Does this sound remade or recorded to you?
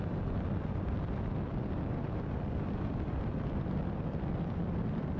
remade